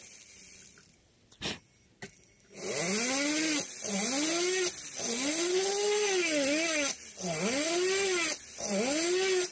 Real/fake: real